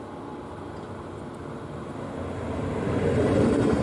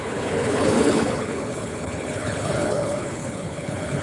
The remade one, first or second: second